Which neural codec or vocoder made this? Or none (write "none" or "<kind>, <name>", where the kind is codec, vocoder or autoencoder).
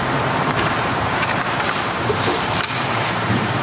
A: vocoder, BigVGAN v2